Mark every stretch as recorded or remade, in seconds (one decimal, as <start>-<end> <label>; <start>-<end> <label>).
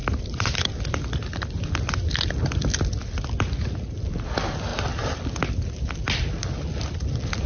0.0-0.8 remade; 0.8-7.5 recorded